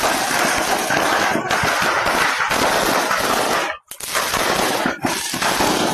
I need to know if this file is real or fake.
real